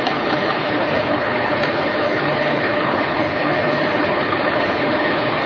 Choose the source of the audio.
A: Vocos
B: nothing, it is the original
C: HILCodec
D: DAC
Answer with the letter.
C